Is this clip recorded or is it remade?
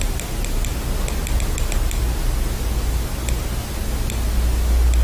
recorded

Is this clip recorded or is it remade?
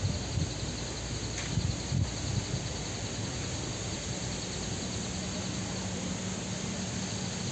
recorded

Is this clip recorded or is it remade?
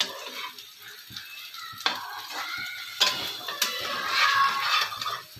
recorded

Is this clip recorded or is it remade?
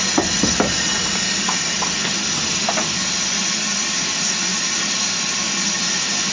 recorded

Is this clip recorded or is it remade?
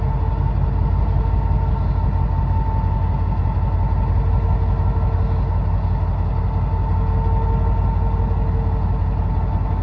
recorded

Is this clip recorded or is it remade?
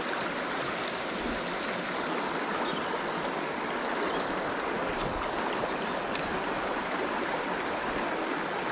recorded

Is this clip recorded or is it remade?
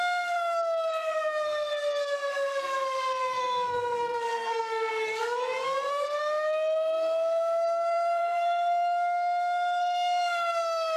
remade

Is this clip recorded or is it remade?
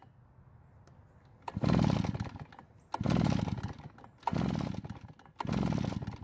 recorded